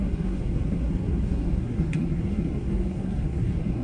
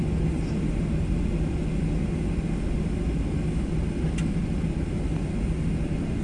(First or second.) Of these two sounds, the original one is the second